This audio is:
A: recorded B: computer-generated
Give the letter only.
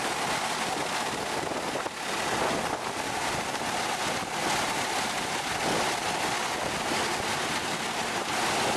A